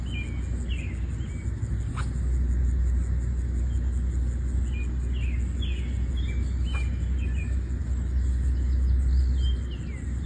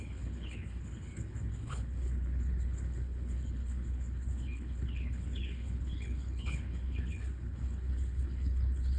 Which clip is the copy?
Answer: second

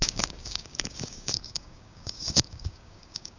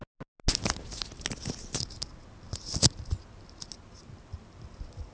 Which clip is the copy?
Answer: first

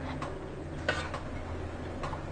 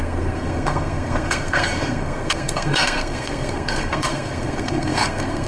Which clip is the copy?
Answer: second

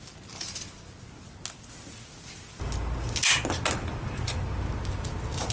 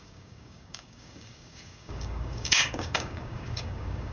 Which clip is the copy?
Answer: second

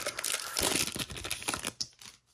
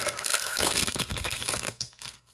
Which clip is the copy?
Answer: second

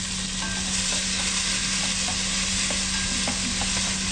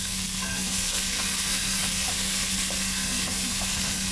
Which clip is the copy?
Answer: second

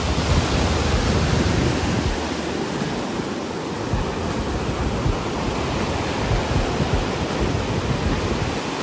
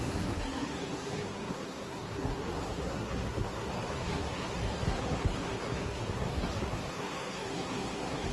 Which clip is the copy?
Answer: second